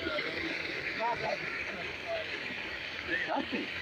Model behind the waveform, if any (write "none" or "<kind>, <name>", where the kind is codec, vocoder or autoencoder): codec, DAC